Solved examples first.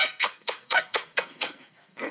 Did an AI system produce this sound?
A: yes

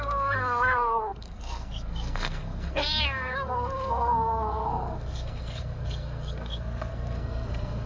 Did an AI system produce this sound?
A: yes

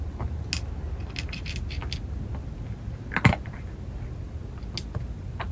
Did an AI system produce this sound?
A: no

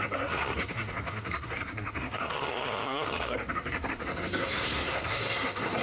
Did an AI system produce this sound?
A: yes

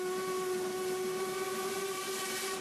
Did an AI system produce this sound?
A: no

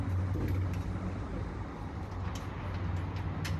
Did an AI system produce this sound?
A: no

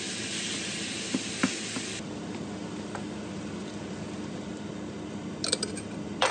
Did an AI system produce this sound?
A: no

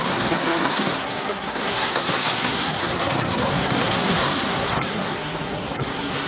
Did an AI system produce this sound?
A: yes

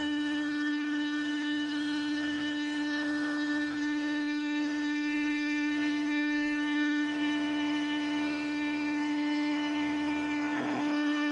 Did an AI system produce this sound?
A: yes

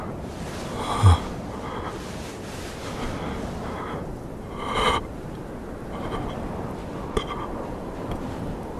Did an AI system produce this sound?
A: no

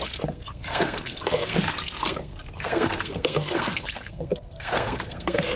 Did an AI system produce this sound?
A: yes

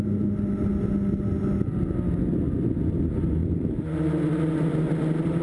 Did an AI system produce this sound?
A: no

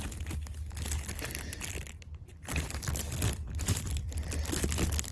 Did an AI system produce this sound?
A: no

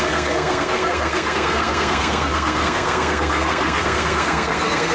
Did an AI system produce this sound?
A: yes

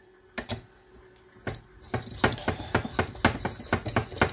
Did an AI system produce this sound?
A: no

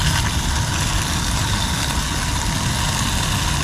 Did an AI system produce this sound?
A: no